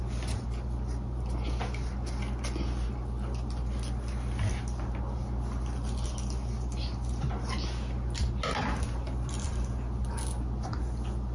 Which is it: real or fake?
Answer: real